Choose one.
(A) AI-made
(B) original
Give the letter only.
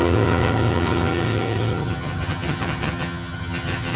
A